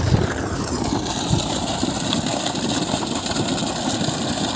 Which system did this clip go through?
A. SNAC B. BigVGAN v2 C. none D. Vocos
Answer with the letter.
C